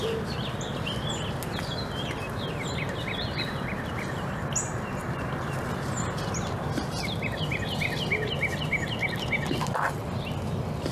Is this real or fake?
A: real